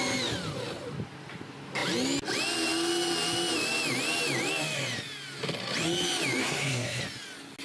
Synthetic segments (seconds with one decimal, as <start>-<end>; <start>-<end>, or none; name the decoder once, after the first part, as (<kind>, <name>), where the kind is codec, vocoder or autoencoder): 6.4-7.0 (codec, SNAC)